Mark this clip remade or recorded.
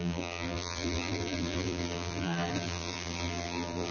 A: remade